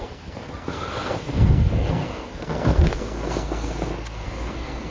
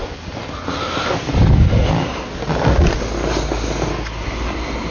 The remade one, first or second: first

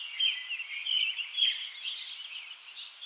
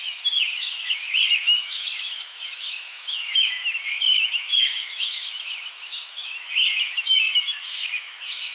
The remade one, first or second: second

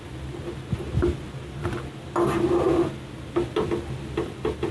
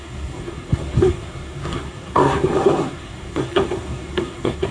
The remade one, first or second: second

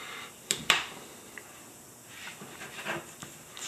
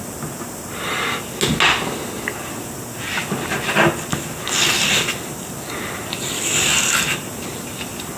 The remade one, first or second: first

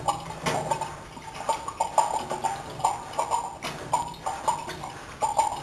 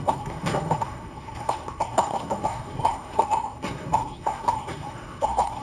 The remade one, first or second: second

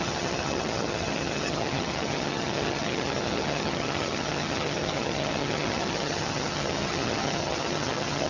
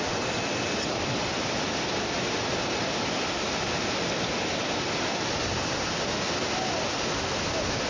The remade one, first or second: first